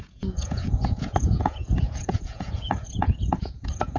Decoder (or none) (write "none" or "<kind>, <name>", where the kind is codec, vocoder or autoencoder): vocoder, Vocos